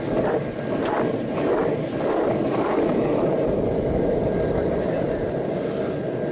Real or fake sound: real